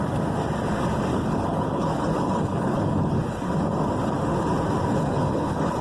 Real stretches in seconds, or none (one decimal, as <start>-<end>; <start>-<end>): 0.0-1.1; 3.5-4.9